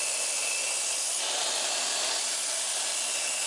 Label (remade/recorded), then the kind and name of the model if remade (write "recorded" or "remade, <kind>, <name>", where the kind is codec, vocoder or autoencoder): remade, vocoder, BigVGAN v2